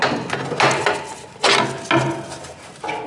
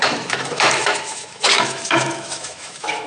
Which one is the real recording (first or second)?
first